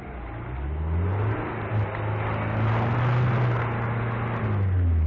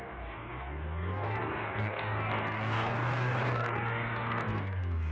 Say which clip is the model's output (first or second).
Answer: second